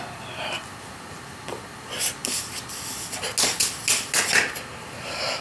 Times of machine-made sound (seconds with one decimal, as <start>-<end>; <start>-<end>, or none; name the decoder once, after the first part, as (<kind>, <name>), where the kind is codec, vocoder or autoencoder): none